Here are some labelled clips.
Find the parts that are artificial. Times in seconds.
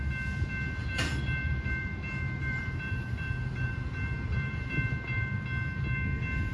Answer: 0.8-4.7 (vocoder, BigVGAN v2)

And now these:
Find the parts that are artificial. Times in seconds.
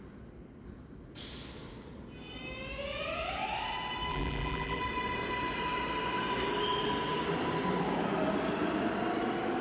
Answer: 4.1-4.8 (vocoder, BigVGAN v2)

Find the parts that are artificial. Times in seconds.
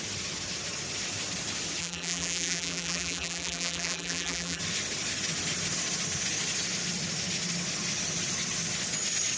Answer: 1.8-4.6 (vocoder, BigVGAN v2)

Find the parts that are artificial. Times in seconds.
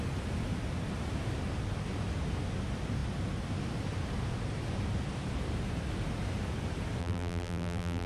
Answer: 7.0-8.1 (vocoder, BigVGAN v2)